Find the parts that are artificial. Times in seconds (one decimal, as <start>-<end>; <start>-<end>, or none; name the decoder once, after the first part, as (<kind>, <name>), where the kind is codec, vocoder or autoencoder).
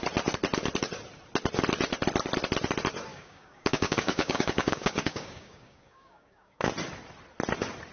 3.1-6.7 (codec, DAC)